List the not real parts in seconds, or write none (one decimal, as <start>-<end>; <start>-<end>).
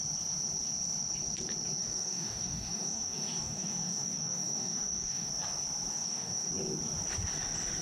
1.8-5.3; 5.9-6.5